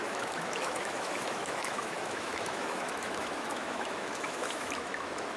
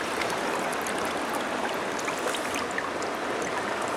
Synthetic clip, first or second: first